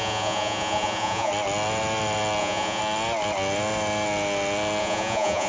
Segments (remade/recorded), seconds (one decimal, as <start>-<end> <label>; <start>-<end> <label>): 0.0-1.3 remade; 1.3-2.4 recorded; 2.4-2.8 remade; 2.8-4.8 recorded; 4.8-5.5 remade